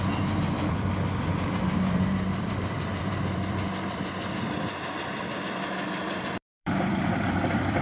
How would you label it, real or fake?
fake